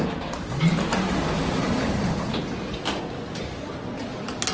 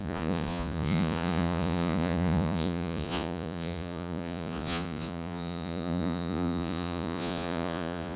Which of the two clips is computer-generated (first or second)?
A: second